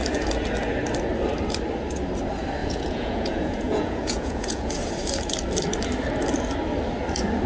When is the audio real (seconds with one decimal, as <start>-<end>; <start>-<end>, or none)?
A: 0.0-2.6; 4.7-7.5